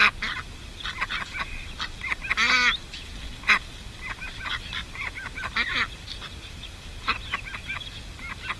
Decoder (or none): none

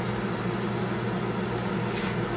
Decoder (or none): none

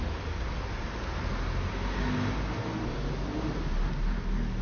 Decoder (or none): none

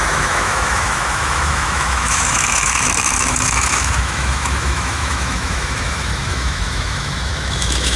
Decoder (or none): autoencoder, DAC-VAE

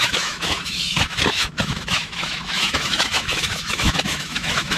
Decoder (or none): autoencoder, DAC-VAE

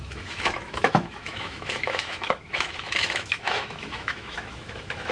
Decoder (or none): autoencoder, DAC-VAE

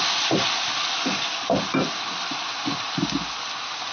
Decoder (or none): none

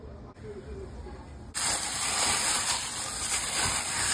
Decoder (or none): none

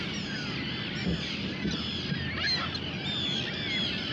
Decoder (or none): none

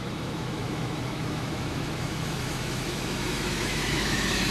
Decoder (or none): autoencoder, DAC-VAE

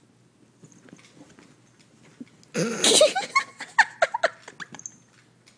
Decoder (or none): none